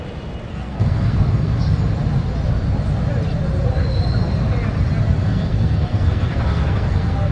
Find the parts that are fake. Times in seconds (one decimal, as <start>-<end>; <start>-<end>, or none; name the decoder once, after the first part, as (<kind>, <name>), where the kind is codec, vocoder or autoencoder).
0.5-1.7 (codec, SNAC); 5.2-7.3